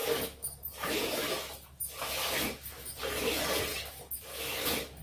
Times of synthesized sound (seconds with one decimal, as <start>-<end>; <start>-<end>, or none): 0.0-3.0; 3.7-5.0